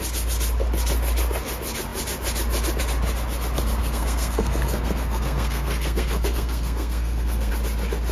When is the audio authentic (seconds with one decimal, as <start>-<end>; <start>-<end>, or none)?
0.0-3.8; 7.5-8.1